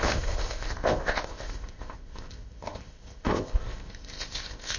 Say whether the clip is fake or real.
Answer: fake